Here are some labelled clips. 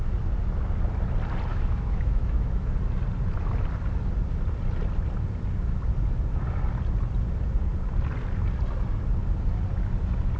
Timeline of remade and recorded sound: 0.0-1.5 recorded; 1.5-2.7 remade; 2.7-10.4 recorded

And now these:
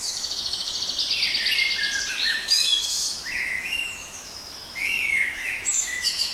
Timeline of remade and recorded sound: 0.0-0.7 remade; 0.7-2.3 recorded; 2.3-6.3 remade

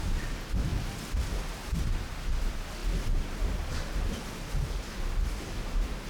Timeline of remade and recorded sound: 0.0-6.1 recorded

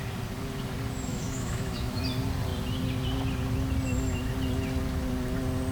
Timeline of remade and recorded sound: 0.0-1.1 recorded; 1.1-2.0 remade; 2.0-5.7 recorded